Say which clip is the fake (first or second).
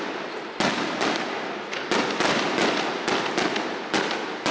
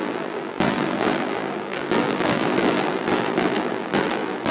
second